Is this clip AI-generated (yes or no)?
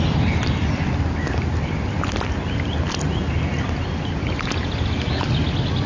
no